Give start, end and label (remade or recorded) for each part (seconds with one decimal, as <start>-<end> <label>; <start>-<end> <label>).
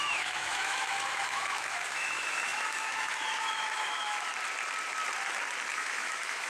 0.0-4.3 remade; 4.3-5.7 recorded; 5.7-6.5 remade